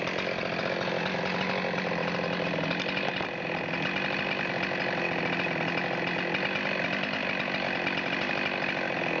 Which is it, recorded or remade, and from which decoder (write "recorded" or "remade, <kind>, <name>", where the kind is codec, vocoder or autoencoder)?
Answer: recorded